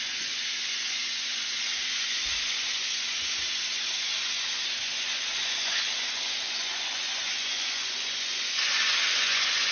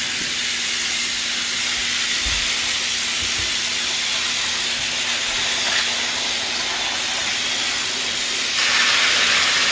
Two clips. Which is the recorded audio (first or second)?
second